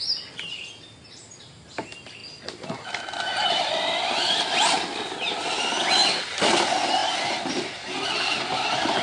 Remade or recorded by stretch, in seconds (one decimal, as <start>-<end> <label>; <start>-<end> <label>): 0.0-9.0 recorded